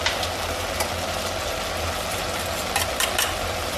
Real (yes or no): yes